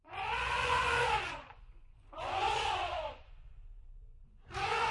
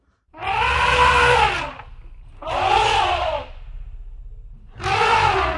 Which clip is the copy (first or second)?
first